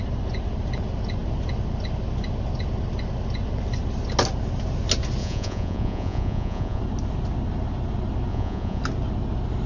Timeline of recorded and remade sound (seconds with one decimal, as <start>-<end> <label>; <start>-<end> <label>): 0.0-5.2 recorded; 5.2-6.8 remade; 6.8-8.3 recorded; 8.3-8.8 remade; 8.8-9.7 recorded